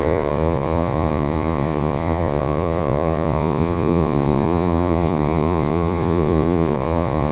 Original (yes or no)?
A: no